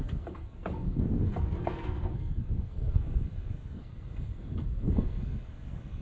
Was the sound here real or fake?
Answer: fake